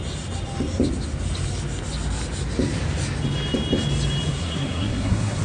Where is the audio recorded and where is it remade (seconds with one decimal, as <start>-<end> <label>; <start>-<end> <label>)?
0.0-4.3 recorded; 4.3-5.4 remade